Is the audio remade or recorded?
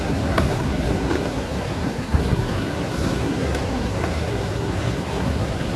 remade